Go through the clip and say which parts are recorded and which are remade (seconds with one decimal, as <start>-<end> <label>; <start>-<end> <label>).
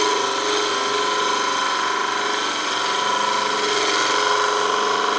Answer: 0.0-5.2 recorded